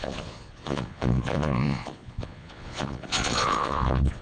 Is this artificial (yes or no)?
yes